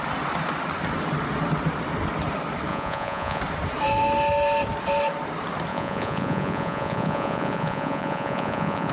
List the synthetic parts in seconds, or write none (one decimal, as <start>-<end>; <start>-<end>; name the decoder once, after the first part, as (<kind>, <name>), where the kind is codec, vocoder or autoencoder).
2.7-3.4 (vocoder, Vocos); 5.7-8.9